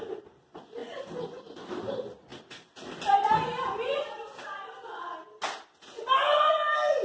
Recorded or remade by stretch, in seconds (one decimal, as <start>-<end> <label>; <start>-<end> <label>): 0.0-7.0 recorded